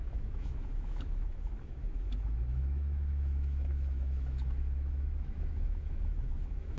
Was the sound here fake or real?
fake